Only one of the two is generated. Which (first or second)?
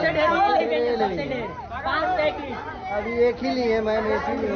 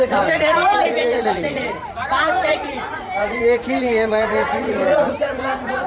second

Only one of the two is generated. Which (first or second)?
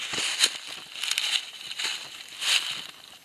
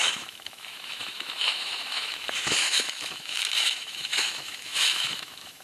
second